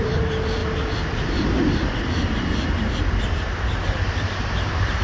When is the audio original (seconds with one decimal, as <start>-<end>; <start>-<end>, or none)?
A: none